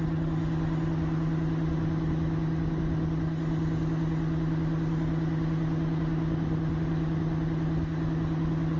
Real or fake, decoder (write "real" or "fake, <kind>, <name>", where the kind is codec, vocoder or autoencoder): real